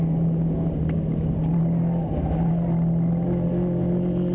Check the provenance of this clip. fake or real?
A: real